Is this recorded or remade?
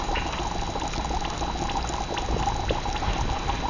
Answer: recorded